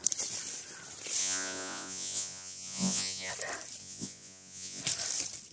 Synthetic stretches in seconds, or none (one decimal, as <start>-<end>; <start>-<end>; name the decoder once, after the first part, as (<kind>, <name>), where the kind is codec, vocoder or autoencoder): 1.2-3.3 (vocoder, Vocos); 3.8-4.8